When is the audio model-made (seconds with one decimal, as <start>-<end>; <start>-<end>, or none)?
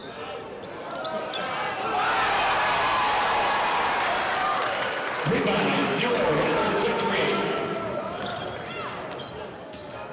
4.4-8.3; 9.6-10.1